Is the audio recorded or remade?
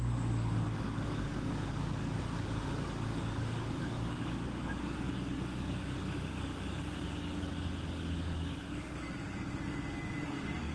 remade